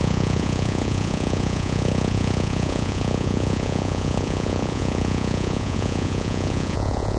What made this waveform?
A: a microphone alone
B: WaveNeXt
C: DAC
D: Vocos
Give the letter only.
D